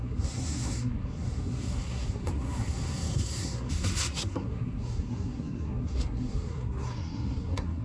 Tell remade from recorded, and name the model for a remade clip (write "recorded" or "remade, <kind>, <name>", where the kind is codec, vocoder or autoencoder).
remade, codec, SNAC